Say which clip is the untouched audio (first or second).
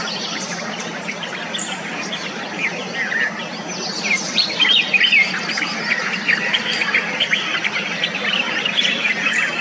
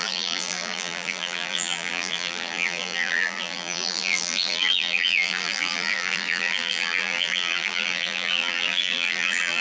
first